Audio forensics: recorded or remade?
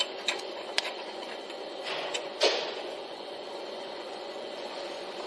remade